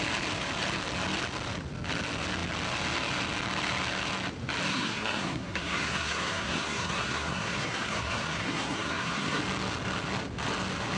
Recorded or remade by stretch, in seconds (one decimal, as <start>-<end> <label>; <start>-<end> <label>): 0.0-4.7 recorded; 4.7-9.4 remade; 9.4-11.0 recorded